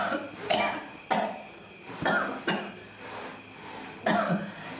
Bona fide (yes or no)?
yes